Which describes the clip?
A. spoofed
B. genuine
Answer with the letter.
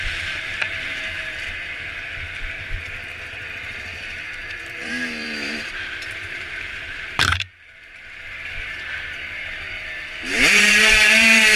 A